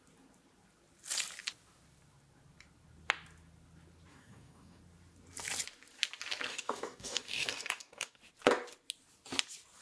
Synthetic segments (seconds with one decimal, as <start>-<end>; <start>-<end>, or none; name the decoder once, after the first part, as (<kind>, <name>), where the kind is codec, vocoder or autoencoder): 4.1-4.8 (codec, DAC); 6.5-8.2